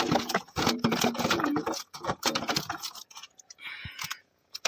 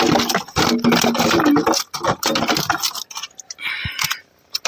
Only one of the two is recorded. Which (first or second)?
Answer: second